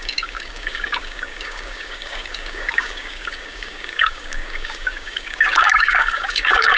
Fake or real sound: fake